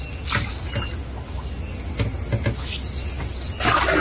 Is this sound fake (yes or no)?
no